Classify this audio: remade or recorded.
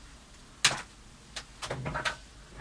recorded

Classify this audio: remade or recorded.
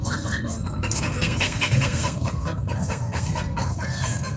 remade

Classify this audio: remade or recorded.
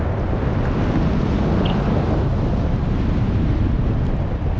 recorded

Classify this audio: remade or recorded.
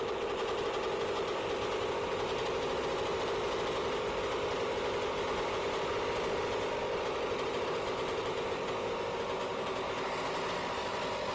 recorded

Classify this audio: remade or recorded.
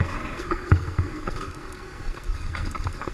remade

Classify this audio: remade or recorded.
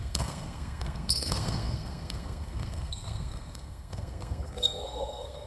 remade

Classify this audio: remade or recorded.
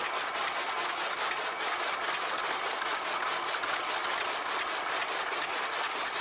recorded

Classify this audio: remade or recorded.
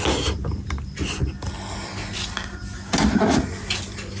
recorded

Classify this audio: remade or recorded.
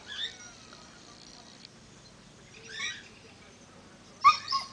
recorded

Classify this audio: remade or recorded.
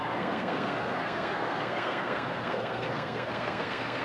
remade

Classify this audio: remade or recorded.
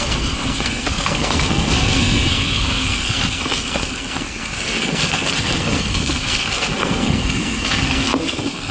remade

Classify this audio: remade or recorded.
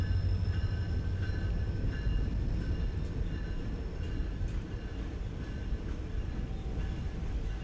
recorded